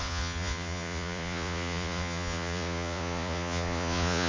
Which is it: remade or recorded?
remade